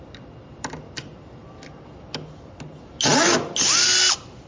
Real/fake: real